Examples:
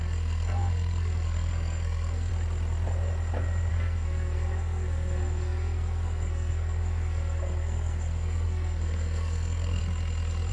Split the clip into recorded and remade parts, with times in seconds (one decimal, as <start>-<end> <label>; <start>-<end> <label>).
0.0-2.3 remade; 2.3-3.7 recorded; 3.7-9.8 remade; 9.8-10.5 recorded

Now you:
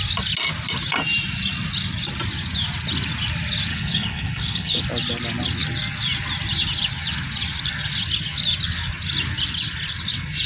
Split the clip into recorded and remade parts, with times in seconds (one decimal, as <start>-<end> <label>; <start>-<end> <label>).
0.0-3.7 recorded; 3.7-4.8 remade; 4.8-10.5 recorded

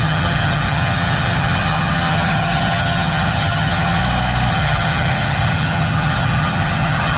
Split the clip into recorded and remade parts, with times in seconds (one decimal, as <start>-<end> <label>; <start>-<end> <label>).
0.0-4.0 remade; 4.0-4.5 recorded; 4.5-7.2 remade